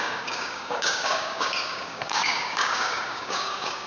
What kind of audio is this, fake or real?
fake